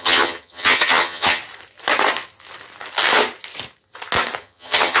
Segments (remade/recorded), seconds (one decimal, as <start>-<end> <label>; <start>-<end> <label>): 0.0-1.4 remade; 1.4-4.4 recorded; 4.4-5.0 remade

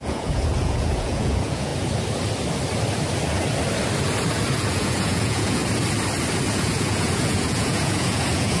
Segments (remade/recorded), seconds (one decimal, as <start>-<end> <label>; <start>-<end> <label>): 0.0-1.7 remade; 1.7-4.5 recorded; 4.5-5.6 remade; 5.6-6.5 recorded; 6.5-8.6 remade

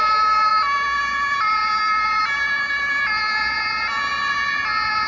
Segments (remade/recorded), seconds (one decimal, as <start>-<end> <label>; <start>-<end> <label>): 0.0-5.1 recorded

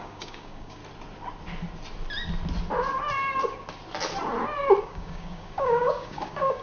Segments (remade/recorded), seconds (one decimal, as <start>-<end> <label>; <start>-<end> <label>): 0.0-0.8 remade; 0.8-4.8 recorded; 4.8-6.6 remade